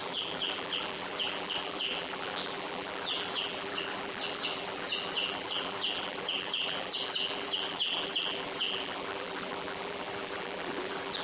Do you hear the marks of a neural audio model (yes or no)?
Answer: yes